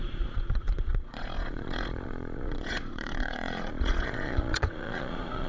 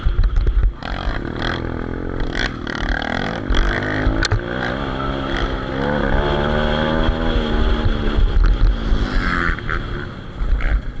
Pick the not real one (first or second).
first